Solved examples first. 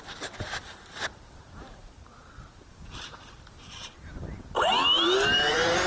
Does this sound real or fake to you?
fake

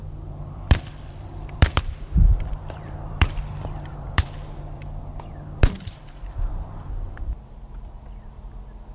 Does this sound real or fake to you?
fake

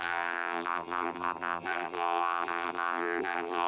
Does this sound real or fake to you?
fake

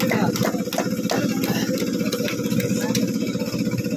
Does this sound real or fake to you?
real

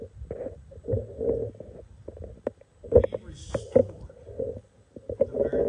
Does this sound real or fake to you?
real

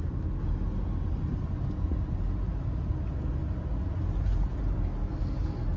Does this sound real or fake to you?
real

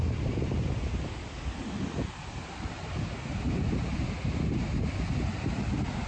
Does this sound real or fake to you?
real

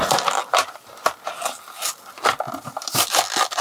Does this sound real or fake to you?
real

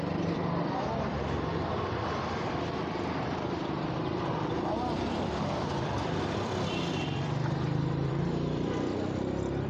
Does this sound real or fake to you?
fake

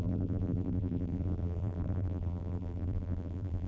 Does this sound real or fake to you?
fake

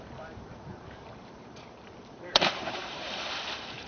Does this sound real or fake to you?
fake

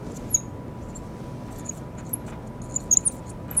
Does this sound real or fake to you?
real